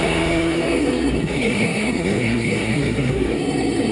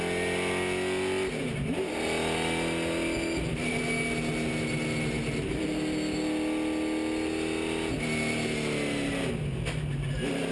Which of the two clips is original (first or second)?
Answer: second